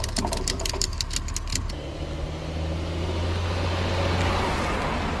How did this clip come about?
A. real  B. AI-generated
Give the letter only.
A